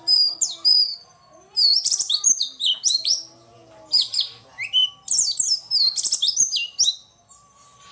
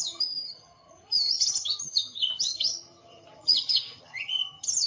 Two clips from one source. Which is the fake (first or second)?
second